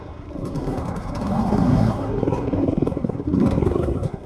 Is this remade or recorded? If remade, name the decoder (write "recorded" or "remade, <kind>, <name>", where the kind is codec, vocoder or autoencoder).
remade, codec, SNAC